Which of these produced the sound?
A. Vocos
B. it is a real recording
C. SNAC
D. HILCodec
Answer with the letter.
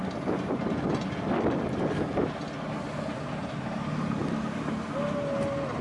B